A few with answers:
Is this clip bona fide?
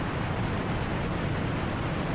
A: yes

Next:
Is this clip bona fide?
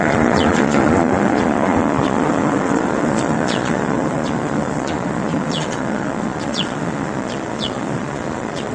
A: no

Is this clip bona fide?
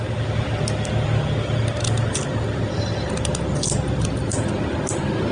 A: yes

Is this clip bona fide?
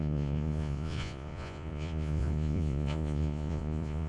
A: no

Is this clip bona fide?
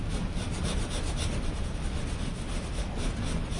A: yes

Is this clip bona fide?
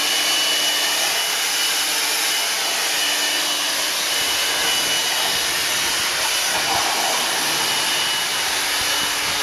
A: yes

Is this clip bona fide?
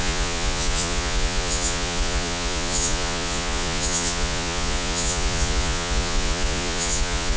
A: no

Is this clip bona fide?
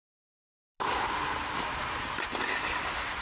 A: yes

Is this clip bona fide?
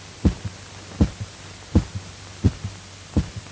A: yes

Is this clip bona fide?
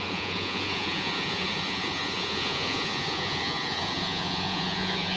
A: no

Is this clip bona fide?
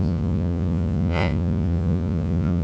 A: no